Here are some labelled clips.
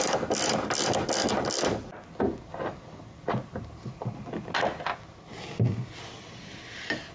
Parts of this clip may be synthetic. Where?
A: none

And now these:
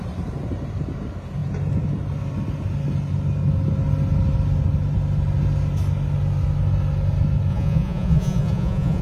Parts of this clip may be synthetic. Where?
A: 7.5-9.0 (vocoder, Vocos)

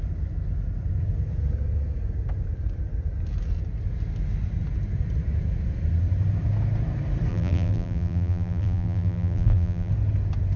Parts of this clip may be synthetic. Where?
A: 7.3-9.9 (vocoder, BigVGAN v2)

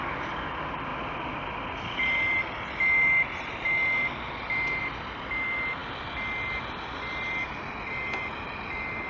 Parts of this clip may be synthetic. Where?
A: none

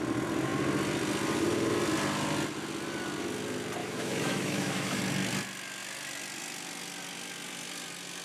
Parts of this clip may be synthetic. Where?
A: 3.8-5.0 (autoencoder, DAC-VAE)